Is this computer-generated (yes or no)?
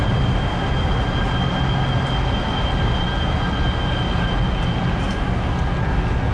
no